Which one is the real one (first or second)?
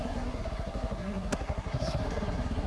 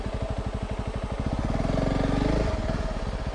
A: second